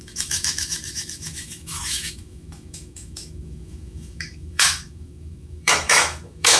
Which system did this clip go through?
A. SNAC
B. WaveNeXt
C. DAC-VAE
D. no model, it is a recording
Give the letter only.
C